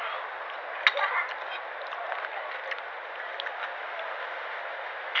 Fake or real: real